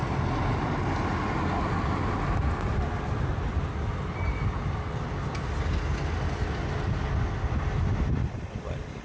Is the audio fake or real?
real